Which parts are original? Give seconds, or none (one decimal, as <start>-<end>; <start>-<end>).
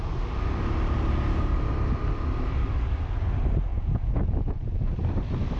0.0-3.7; 4.9-5.6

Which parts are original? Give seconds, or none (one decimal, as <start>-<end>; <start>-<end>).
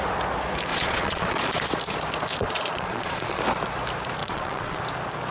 0.0-0.7; 1.6-2.3; 3.4-4.2; 4.8-5.3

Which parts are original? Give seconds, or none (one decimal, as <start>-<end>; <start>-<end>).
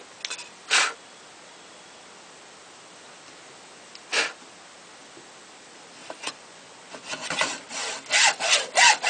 0.0-6.2; 7.5-9.1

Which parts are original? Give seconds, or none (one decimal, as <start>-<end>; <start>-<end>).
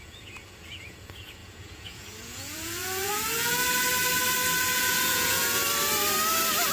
3.6-4.6; 5.6-6.7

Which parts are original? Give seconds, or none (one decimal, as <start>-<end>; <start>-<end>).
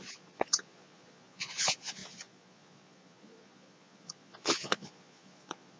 none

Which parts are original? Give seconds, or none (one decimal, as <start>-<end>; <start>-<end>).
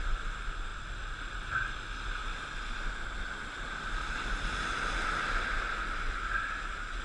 0.0-7.0